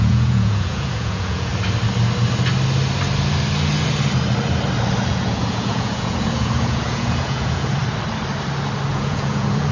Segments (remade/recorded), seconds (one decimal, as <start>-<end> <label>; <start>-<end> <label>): 0.0-1.5 remade; 1.5-5.1 recorded; 5.1-7.8 remade; 7.8-8.9 recorded; 8.9-9.7 remade